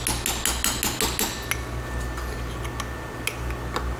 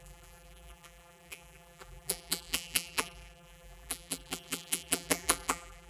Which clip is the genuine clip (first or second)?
first